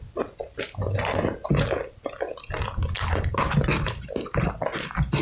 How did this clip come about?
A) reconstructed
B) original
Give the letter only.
B